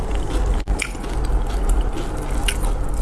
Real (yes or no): yes